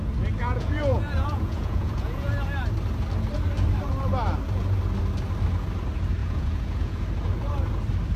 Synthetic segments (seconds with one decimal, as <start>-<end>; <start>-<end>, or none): 0.4-2.3; 6.2-7.0